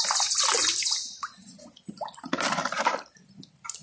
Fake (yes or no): no